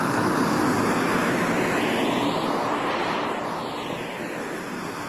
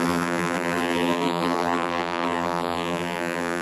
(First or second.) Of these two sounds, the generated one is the second